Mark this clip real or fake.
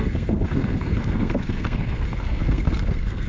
fake